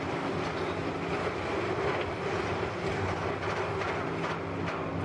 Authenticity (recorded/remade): recorded